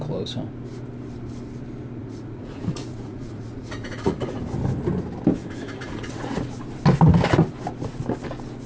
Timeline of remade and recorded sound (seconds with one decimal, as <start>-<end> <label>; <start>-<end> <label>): 0.0-2.0 recorded; 2.0-4.4 remade; 4.4-5.4 recorded; 5.4-6.5 remade; 6.5-8.7 recorded